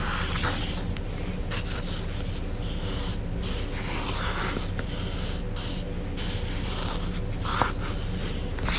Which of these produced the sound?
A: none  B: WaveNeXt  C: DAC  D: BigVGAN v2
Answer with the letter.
A